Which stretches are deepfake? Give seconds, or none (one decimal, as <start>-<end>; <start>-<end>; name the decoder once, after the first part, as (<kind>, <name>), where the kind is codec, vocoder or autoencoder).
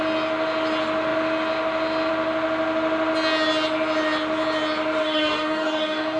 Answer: 5.0-6.2 (codec, DAC)